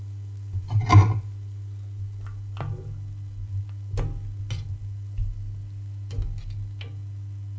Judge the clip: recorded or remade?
recorded